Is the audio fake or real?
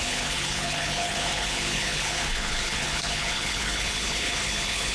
fake